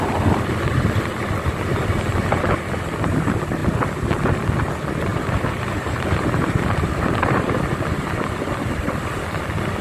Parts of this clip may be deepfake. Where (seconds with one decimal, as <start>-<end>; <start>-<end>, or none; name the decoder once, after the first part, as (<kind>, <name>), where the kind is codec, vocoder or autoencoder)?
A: 5.1-7.0 (vocoder, BigVGAN v2)

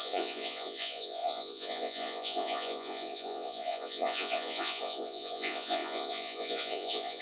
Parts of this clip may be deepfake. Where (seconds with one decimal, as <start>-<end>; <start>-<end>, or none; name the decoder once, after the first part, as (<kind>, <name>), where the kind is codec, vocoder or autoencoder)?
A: 0.0-7.2 (vocoder, Vocos)